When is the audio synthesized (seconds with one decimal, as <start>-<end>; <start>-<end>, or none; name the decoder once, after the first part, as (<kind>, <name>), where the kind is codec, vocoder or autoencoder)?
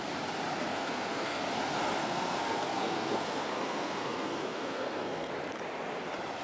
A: 0.7-1.4 (codec, SNAC); 2.0-5.3